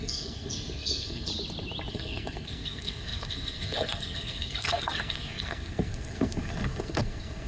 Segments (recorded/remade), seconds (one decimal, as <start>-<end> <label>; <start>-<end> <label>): 0.0-1.3 remade; 1.3-1.9 recorded; 1.9-7.5 remade